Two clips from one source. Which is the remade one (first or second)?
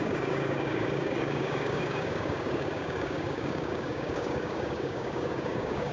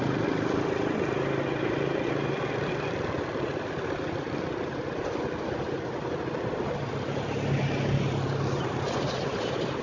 first